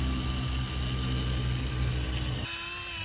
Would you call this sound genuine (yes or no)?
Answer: yes